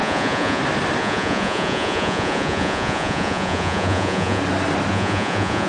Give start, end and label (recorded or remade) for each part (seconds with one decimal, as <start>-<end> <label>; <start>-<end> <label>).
0.0-0.6 remade; 0.6-1.0 recorded; 1.0-4.4 remade; 4.4-4.9 recorded; 4.9-5.7 remade